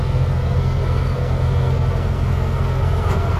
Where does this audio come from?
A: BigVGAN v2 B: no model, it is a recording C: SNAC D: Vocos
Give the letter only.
C